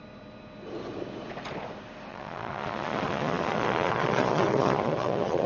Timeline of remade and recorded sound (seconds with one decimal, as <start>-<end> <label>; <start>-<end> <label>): 0.0-2.1 recorded; 2.1-5.5 remade